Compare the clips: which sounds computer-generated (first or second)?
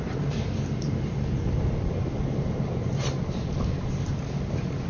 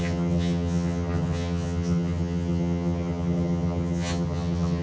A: second